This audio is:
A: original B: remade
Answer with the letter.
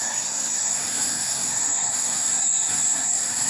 B